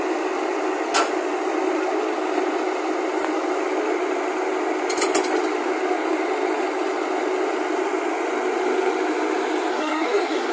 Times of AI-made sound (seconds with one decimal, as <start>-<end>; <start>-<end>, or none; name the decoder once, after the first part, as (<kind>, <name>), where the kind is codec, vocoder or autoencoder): 9.7-10.5 (codec, SNAC)